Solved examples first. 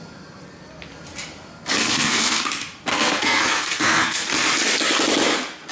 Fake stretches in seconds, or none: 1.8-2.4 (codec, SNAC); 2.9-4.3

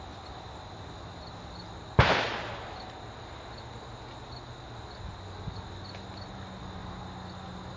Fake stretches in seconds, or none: none

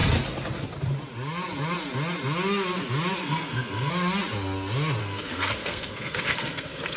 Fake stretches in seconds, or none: 3.2-3.9 (codec, SNAC); 5.0-7.0

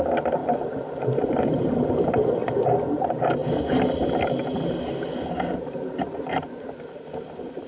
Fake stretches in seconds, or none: none

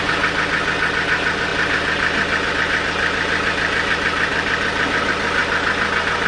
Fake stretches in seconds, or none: none